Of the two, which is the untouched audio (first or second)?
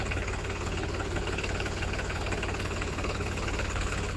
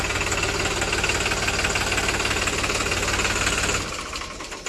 second